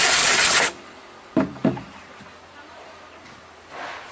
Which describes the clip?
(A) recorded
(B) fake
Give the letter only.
B